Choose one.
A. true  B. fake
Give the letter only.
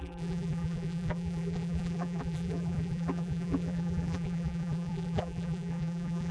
B